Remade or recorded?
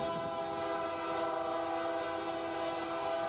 recorded